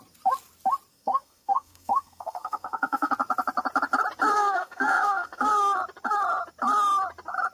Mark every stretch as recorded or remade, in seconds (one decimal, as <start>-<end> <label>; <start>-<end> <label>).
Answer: 0.0-0.9 recorded; 0.9-3.1 remade; 3.1-4.3 recorded; 4.3-5.5 remade; 5.5-7.5 recorded